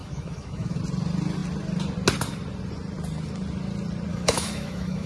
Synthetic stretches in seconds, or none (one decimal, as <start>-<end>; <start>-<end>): 0.0-0.8; 4.1-5.1